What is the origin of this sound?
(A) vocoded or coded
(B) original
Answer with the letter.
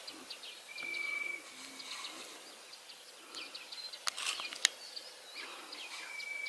B